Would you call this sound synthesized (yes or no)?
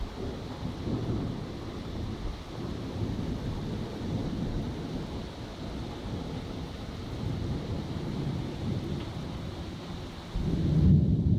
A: no